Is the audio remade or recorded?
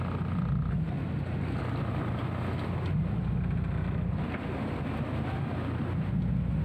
recorded